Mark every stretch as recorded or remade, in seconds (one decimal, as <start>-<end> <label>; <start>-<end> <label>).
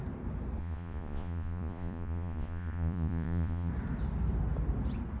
0.0-0.6 recorded; 0.6-3.7 remade; 3.7-5.2 recorded